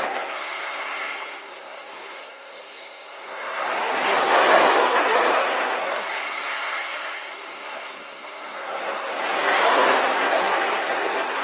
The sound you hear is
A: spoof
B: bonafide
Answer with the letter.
A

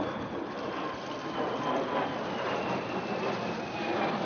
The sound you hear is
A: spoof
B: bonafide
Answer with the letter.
B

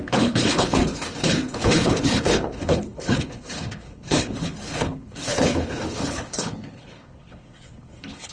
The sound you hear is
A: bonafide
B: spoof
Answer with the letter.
B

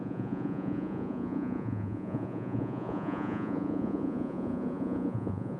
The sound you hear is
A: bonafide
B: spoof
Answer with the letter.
B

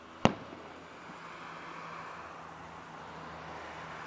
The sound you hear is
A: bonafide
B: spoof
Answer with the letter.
A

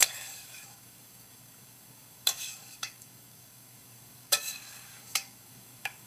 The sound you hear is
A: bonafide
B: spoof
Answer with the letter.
B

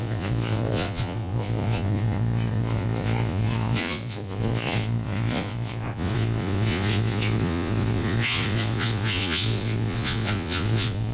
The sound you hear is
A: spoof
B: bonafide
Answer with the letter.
A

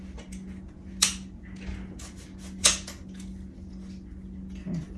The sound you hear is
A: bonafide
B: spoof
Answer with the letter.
A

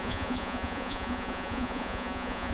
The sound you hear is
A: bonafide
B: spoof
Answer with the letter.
B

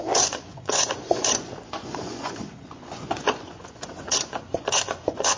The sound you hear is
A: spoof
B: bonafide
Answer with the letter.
A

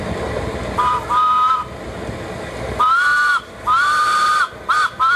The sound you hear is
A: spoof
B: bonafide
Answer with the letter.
B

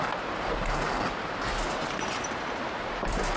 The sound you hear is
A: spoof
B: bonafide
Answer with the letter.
B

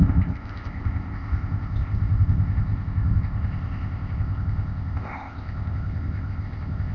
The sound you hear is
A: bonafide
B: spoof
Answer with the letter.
B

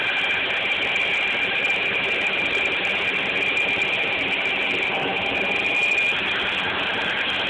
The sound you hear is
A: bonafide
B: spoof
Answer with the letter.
A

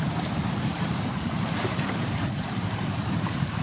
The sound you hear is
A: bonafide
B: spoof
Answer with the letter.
B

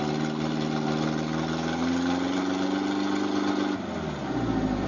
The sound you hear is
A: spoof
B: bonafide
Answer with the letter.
B